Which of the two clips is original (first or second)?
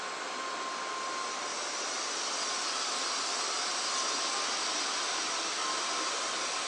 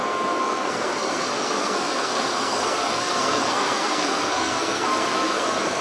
first